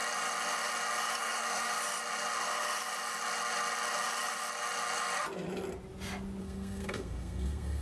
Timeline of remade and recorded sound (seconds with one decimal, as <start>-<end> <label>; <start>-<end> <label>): 0.0-1.2 recorded; 1.2-1.7 remade; 1.7-6.4 recorded; 6.4-7.8 remade

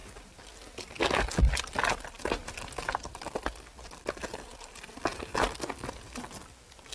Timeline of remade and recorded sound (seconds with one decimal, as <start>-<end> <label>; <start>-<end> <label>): 0.0-4.5 recorded; 4.5-5.2 remade; 5.2-6.9 recorded

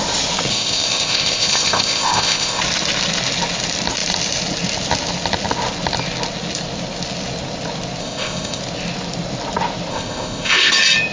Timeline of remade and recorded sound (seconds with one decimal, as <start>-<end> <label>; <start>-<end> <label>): 0.0-0.5 recorded; 0.5-2.6 remade; 2.6-8.0 recorded; 8.0-8.6 remade; 8.6-9.9 recorded; 9.9-10.7 remade; 10.7-11.1 recorded

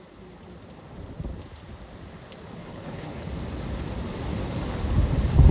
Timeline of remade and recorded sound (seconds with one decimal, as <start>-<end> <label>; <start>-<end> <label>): 0.0-2.6 recorded; 2.6-3.3 remade; 3.3-5.5 recorded

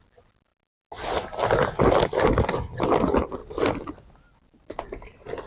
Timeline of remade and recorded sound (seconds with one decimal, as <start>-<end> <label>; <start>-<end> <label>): 0.0-5.5 recorded

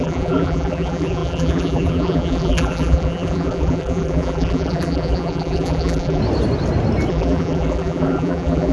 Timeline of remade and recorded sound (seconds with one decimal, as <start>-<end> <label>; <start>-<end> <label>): 0.0-6.2 remade; 6.2-7.1 recorded; 7.1-8.7 remade